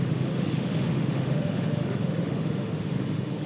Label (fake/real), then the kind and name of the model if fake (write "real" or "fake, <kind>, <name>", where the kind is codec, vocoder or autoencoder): fake, autoencoder, DAC-VAE